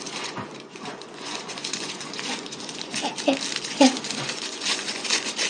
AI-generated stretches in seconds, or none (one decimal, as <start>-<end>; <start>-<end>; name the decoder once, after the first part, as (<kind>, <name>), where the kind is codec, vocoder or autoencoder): 0.0-3.0 (vocoder, Vocos); 3.6-5.5